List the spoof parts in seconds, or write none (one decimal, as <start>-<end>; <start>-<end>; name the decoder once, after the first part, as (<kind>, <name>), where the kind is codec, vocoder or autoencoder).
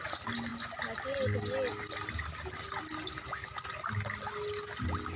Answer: none